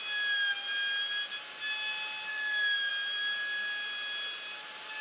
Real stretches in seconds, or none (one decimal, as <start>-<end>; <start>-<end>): 0.0-2.3; 2.9-5.0